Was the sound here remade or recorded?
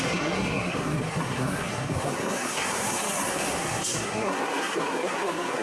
remade